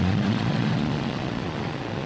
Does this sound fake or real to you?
fake